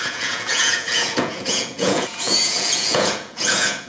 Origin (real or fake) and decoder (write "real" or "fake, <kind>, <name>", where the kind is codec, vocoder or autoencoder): fake, vocoder, Vocos